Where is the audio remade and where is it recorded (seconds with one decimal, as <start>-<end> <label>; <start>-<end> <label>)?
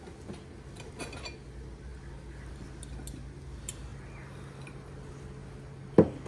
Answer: 0.0-6.3 recorded